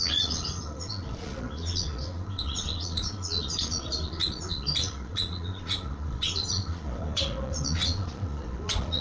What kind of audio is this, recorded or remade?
remade